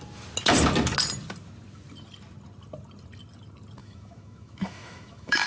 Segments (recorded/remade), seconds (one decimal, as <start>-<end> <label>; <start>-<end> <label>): 0.0-3.8 recorded; 3.8-5.5 remade